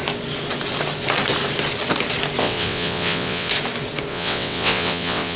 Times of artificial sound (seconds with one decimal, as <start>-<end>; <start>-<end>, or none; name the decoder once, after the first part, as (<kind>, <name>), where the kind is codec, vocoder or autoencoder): 2.4-3.5 (vocoder, WaveNeXt); 4.1-5.4